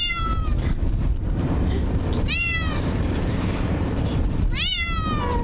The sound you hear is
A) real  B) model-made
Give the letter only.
B